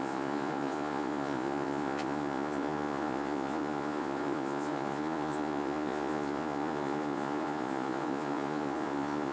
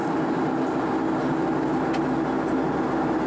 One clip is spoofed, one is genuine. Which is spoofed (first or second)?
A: first